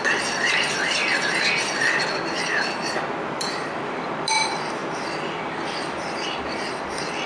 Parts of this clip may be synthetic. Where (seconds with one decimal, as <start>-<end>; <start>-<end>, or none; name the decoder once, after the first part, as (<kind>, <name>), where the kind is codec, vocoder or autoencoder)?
0.0-1.0 (vocoder, BigVGAN v2); 3.3-4.8; 6.0-7.3